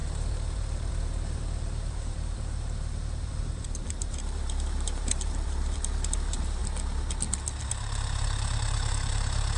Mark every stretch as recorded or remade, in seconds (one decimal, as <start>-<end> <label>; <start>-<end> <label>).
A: 0.0-6.6 remade; 6.6-7.7 recorded; 7.7-9.6 remade